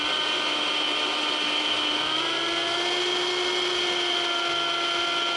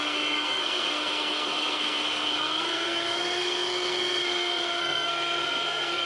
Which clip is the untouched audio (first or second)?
first